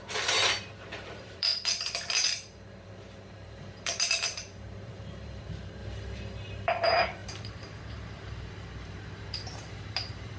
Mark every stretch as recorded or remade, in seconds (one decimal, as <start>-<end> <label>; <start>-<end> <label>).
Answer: 0.0-5.8 remade; 5.8-6.7 recorded; 6.7-10.4 remade